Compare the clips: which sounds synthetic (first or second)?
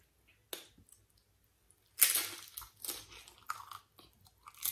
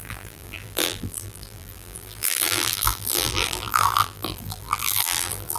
second